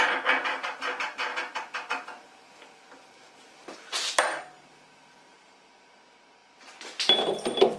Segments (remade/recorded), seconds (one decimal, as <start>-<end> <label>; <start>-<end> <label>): 0.0-7.8 recorded